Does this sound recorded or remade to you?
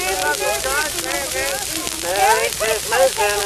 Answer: recorded